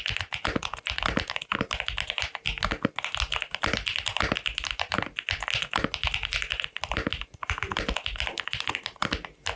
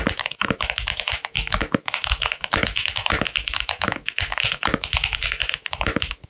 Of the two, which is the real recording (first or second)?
first